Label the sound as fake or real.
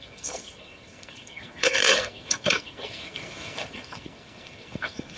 fake